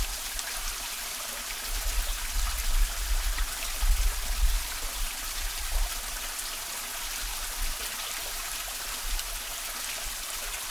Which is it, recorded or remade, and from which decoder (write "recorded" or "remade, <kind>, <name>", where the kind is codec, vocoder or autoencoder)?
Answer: recorded